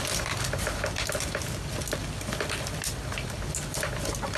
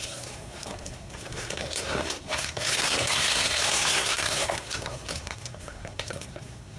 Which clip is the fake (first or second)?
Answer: second